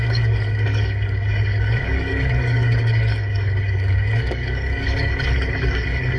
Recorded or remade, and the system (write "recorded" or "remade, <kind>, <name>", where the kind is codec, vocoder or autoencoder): remade, codec, DAC